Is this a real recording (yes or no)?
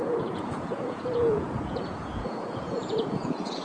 no